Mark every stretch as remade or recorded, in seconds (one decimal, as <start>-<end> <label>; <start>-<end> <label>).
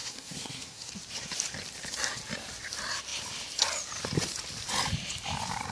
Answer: 0.0-0.9 remade; 0.9-5.7 recorded